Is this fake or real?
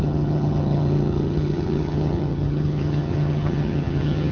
fake